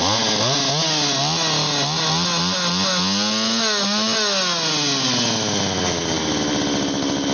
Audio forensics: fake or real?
real